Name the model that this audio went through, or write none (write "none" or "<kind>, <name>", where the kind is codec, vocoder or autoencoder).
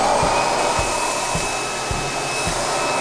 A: none